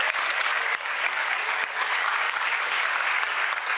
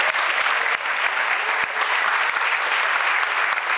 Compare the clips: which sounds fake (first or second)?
first